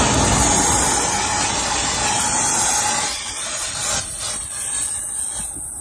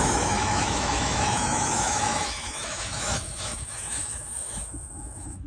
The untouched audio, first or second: first